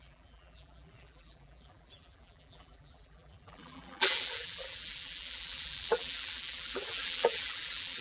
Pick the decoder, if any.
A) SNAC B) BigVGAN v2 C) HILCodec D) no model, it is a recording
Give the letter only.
B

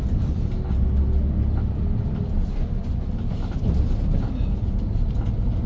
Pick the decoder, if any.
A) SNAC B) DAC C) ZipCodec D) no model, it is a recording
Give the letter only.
D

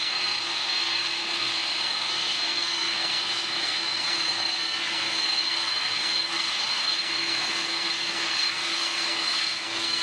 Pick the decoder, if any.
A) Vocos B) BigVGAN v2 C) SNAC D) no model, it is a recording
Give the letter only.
C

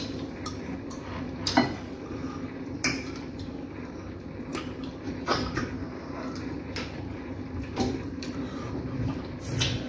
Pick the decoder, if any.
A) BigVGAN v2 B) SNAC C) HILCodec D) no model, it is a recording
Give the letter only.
A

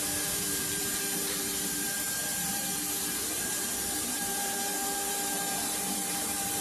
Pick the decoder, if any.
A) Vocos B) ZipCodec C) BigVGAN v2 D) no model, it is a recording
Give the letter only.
C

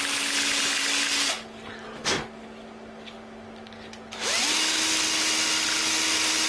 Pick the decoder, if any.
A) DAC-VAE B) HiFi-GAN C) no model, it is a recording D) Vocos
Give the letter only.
C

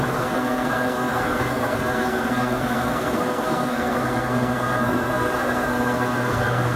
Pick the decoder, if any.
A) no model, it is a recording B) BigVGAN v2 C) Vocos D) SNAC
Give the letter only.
D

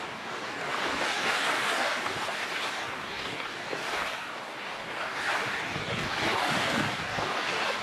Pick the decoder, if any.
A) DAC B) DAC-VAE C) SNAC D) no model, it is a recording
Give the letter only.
A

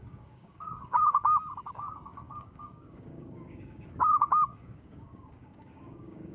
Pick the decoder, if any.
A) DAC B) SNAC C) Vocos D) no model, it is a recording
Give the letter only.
A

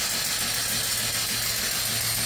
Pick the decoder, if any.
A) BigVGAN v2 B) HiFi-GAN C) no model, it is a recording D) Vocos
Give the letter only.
C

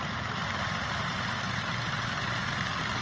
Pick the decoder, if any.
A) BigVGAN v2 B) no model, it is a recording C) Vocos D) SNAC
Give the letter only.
A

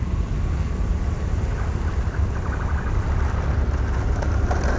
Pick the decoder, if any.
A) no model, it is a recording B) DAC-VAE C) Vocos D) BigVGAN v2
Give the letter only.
A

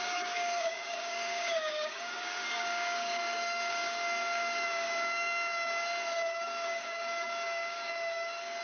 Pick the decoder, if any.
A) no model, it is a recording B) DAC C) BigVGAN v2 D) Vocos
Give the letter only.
B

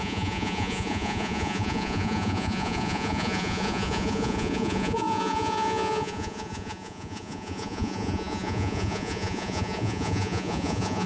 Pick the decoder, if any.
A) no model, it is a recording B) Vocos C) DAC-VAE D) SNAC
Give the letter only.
B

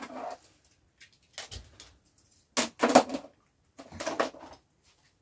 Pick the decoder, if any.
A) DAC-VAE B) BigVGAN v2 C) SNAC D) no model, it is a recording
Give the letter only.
D